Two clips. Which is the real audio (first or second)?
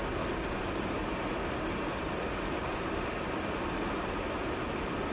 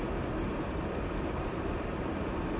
first